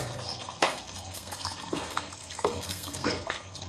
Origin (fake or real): fake